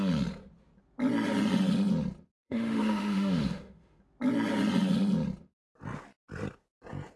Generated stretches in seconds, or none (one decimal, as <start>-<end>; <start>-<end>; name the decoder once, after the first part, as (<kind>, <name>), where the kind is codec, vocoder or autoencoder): 2.4-4.0 (autoencoder, DAC-VAE)